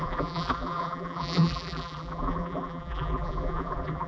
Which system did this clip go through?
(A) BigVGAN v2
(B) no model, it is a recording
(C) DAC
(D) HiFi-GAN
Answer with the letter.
A